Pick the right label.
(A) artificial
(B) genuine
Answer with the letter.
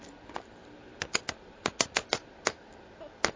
B